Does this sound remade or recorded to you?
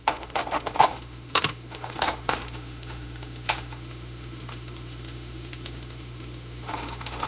remade